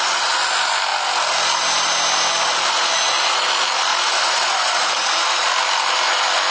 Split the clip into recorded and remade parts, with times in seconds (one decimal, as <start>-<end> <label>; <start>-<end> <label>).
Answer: 0.0-3.9 recorded; 3.9-4.9 remade; 4.9-6.5 recorded